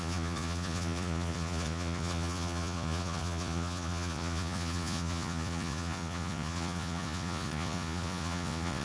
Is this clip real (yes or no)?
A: no